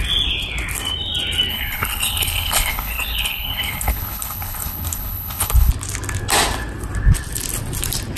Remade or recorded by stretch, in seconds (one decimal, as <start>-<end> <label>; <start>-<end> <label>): 0.0-1.5 recorded; 1.5-5.7 remade; 5.7-8.2 recorded